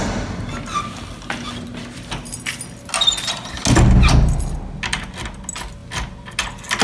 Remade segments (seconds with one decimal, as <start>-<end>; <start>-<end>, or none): none